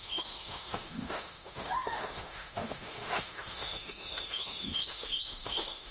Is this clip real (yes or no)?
no